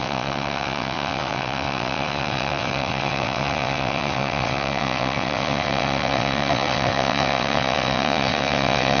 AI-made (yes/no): yes